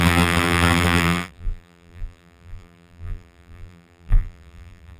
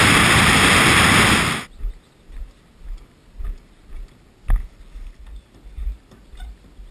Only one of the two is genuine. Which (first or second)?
second